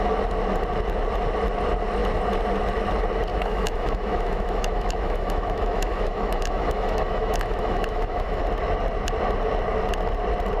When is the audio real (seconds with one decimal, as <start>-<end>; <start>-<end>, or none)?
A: 0.0-3.3; 8.4-10.6